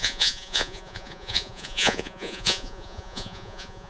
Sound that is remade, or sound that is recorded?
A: remade